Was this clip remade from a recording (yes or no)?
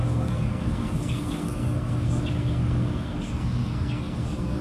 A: yes